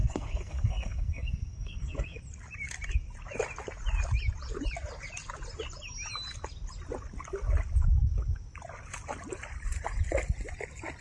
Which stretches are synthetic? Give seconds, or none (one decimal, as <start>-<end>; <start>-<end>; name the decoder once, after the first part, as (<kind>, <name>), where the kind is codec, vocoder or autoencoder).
0.0-2.2 (codec, SNAC)